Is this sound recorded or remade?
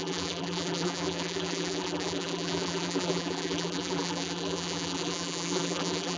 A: remade